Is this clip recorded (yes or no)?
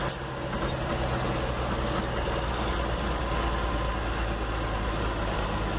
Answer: yes